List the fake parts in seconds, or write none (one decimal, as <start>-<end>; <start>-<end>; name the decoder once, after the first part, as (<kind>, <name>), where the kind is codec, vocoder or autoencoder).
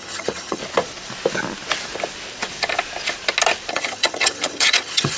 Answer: 0.0-0.6 (vocoder, HiFi-GAN); 3.7-5.2